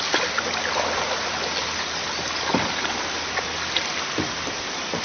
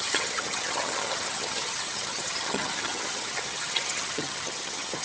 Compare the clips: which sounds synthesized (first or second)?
second